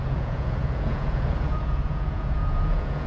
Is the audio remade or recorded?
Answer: remade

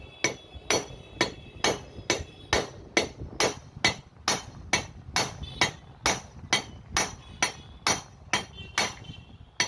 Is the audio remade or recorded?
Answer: recorded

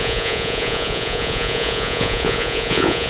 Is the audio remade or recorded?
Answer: remade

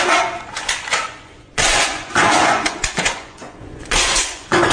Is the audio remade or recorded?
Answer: remade